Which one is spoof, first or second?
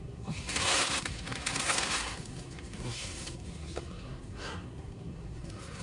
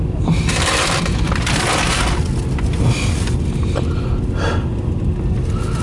first